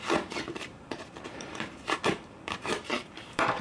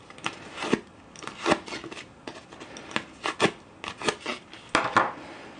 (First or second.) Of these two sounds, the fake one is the first